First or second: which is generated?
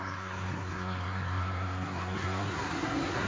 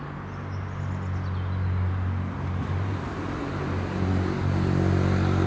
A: first